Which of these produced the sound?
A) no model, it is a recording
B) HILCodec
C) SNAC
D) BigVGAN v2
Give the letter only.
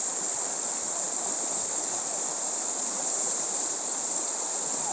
D